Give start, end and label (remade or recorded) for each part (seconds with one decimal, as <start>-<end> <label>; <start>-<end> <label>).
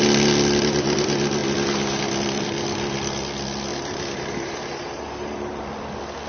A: 0.0-3.7 recorded; 3.7-5.6 remade; 5.6-6.3 recorded